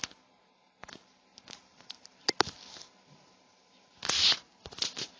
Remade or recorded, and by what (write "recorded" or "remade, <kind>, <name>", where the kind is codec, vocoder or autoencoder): recorded